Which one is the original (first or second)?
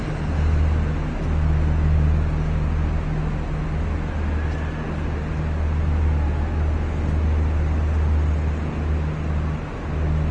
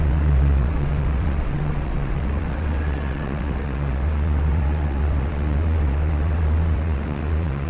first